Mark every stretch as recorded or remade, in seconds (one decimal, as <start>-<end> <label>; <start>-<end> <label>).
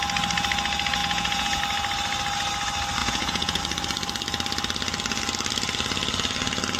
0.0-1.0 recorded; 1.0-1.6 remade; 1.6-3.0 recorded; 3.0-3.6 remade; 3.6-6.8 recorded